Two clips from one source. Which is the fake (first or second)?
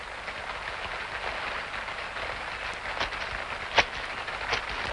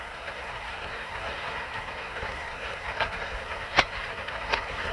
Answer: second